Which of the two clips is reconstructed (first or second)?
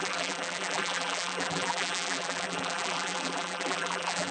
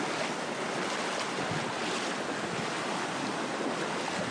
first